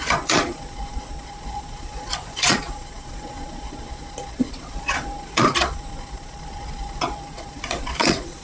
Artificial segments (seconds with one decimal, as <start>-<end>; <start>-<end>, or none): 0.0-8.4